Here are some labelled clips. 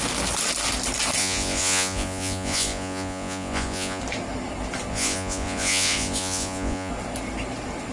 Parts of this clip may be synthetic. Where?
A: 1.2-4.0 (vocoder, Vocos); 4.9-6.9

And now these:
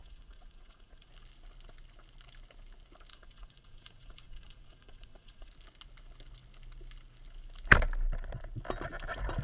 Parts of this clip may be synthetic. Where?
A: 0.0-1.1 (vocoder, Vocos); 3.1-5.5

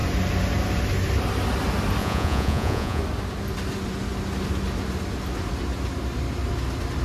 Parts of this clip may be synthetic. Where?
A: 2.0-3.0 (vocoder, Vocos)

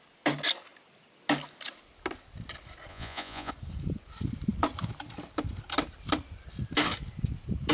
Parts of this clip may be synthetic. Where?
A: 2.9-3.5 (vocoder, Vocos)

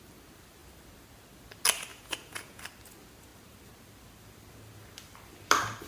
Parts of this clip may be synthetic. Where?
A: 1.9-2.6 (vocoder, Vocos)

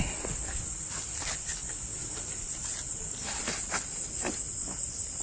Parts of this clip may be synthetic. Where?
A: none

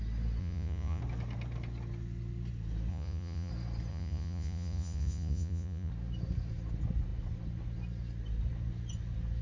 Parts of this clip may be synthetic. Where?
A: 0.4-1.0 (vocoder, Vocos); 2.9-3.5; 3.9-5.9

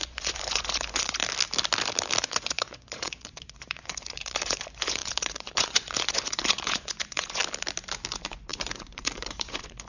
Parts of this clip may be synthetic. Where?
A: 0.0-1.2 (vocoder, Vocos); 2.2-7.4; 8.1-9.9